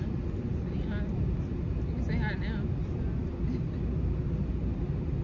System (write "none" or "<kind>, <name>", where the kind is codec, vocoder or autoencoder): none